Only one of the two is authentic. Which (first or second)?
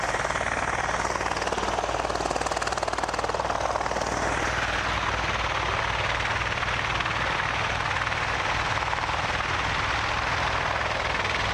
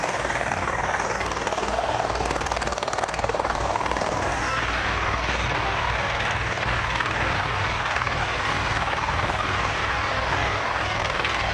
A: first